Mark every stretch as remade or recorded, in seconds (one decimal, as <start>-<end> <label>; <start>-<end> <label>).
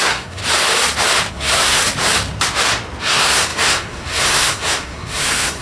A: 0.0-0.4 remade; 0.4-1.3 recorded; 1.3-1.8 remade; 1.8-3.0 recorded; 3.0-5.6 remade